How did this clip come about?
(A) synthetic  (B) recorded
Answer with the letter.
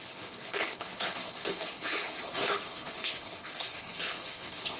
A